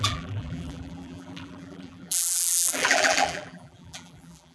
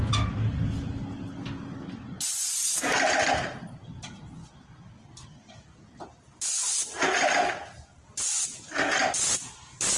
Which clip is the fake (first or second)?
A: first